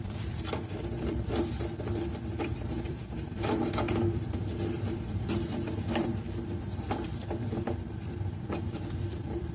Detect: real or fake fake